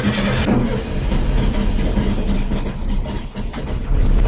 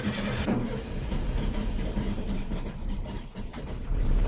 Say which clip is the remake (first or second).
second